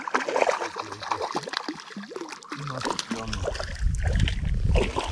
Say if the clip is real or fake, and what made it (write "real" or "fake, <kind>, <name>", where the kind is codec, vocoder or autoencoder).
real